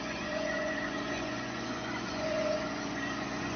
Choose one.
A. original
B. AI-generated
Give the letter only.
B